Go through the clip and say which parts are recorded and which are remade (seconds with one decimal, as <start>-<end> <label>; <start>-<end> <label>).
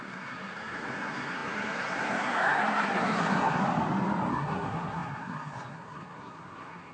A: 0.0-3.6 remade; 3.6-4.3 recorded; 4.3-6.9 remade